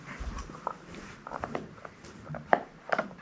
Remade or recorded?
remade